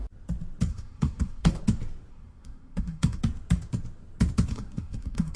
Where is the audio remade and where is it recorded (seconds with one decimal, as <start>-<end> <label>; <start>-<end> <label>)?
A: 0.0-0.7 recorded; 0.7-1.6 remade; 1.6-2.1 recorded; 2.1-3.2 remade; 3.2-4.5 recorded; 4.5-5.4 remade